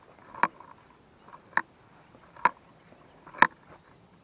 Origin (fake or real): real